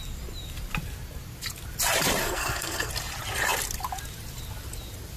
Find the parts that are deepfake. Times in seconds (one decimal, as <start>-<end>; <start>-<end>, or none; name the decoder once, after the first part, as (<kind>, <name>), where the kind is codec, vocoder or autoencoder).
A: 2.2-2.9 (codec, SNAC)